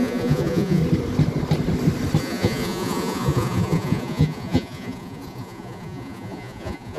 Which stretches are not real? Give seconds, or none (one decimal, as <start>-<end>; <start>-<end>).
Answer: 0.0-0.8; 2.2-7.0